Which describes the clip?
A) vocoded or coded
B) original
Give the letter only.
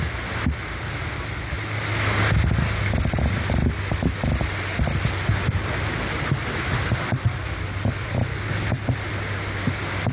B